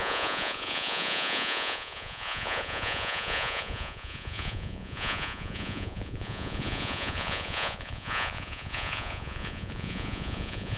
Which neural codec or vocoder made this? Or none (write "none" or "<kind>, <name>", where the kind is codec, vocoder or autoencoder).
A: vocoder, Vocos